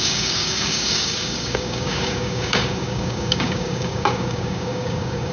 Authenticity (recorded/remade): remade